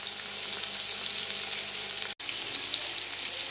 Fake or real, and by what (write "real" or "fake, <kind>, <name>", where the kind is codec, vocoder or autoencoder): real